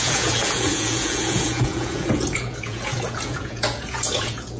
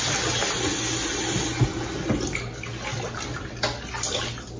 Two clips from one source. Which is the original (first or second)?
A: second